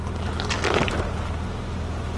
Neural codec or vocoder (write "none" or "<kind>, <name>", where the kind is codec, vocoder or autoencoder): none